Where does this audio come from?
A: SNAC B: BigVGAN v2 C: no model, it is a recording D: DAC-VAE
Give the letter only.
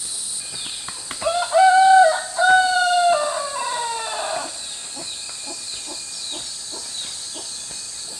C